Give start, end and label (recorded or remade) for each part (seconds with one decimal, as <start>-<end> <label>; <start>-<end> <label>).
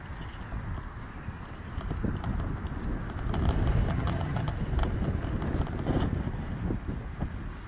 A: 0.0-3.9 recorded; 3.9-4.5 remade; 4.5-7.7 recorded